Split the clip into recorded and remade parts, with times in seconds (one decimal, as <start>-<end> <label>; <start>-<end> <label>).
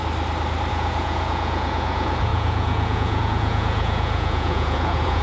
0.0-0.7 recorded; 0.7-5.2 remade